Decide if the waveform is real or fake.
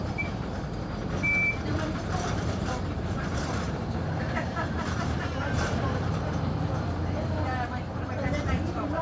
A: fake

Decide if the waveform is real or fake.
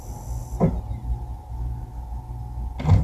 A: real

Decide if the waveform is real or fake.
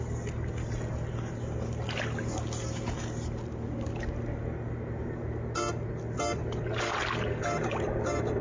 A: real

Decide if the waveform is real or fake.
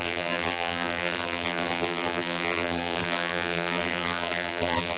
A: fake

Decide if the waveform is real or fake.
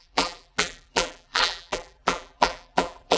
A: fake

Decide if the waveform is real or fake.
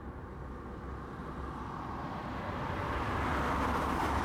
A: real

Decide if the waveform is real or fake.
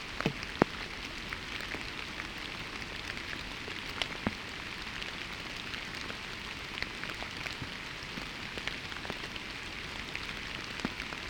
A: real